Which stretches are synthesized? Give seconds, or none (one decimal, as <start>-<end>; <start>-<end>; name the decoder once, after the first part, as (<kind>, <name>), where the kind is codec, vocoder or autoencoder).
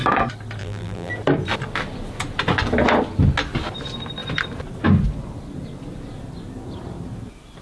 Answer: 0.6-1.1 (vocoder, BigVGAN v2)